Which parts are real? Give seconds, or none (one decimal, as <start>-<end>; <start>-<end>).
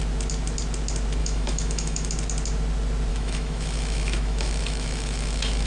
0.0-1.2; 2.1-3.1